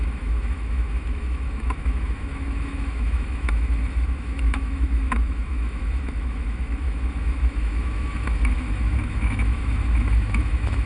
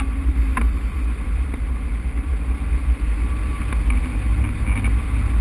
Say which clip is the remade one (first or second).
first